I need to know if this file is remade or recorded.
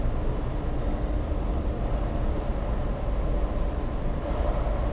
recorded